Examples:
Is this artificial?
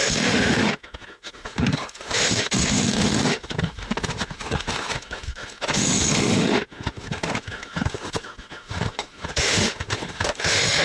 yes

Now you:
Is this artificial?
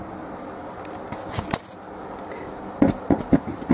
no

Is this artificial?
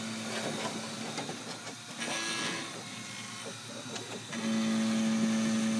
no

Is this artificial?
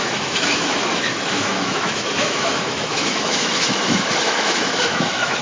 yes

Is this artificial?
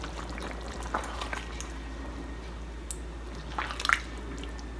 no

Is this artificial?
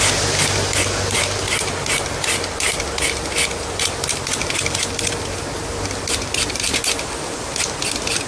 no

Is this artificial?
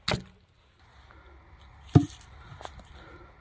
no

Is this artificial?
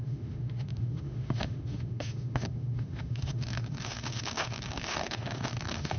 yes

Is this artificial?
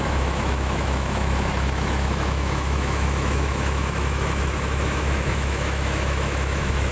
yes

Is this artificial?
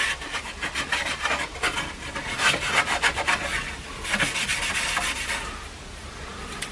no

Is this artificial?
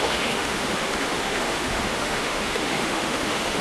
yes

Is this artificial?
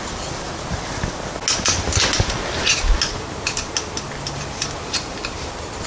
no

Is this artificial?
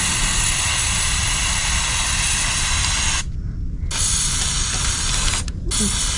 no